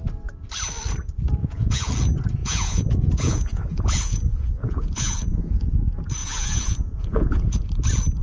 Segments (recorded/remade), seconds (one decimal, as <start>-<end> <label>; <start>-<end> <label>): 0.0-1.4 recorded; 1.4-1.9 remade; 1.9-2.4 recorded; 2.4-5.8 remade; 5.8-6.2 recorded; 6.2-7.6 remade; 7.6-8.2 recorded